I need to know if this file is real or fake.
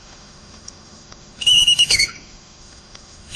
fake